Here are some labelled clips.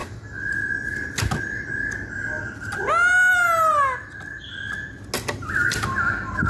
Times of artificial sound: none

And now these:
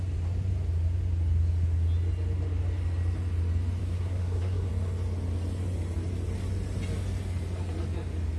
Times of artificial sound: 3.8-4.7 (codec, SNAC)

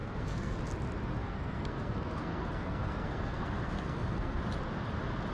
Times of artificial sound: 0.0-0.6 (codec, SNAC); 1.2-4.4

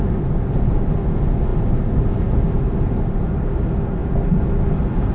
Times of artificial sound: none

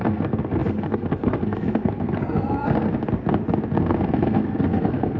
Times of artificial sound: 0.0-2.9 (codec, SNAC); 3.8-5.2

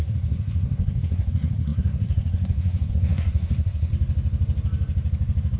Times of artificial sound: 0.0-3.9 (codec, SNAC)

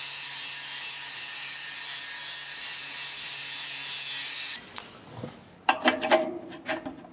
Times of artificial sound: none